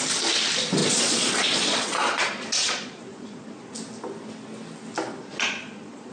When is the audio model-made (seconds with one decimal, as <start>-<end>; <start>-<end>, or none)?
0.8-3.7; 5.2-6.1